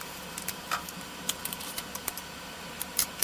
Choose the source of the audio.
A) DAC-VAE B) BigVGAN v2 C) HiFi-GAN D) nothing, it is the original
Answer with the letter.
B